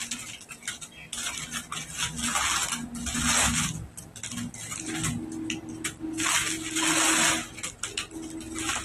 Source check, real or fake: real